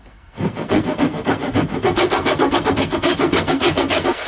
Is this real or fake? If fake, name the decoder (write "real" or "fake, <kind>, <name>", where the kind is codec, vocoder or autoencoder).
fake, codec, SNAC